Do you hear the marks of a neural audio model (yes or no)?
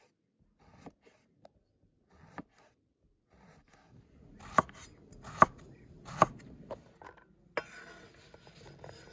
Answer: no